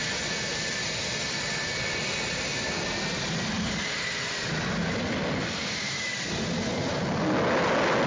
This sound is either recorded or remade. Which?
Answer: recorded